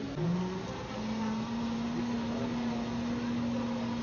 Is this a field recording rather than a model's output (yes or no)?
yes